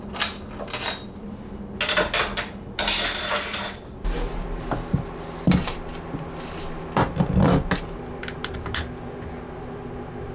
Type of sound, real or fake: real